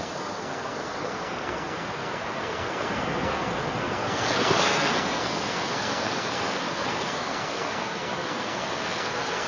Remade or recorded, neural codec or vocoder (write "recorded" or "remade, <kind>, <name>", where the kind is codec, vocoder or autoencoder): remade, codec, SNAC